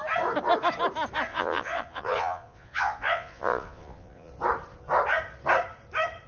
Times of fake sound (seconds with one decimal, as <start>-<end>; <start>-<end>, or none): 1.3-4.3